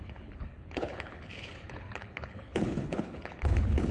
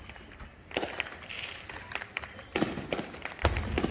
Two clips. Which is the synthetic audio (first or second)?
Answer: first